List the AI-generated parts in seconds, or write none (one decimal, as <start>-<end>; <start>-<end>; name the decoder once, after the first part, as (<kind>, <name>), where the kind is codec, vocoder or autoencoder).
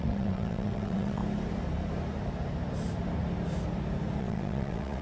0.0-1.2 (vocoder, WaveNeXt); 4.2-5.0